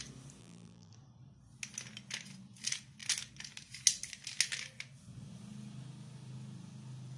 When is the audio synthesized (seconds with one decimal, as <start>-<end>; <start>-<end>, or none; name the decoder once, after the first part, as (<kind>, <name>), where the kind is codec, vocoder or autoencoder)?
0.4-0.9 (vocoder, BigVGAN v2)